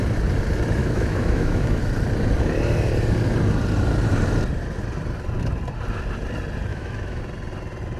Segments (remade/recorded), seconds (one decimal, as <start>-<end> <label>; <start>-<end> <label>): 0.0-0.8 recorded; 0.8-1.8 remade; 1.8-6.7 recorded; 6.7-7.2 remade; 7.2-8.0 recorded